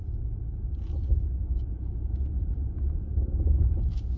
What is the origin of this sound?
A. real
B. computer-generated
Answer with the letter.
A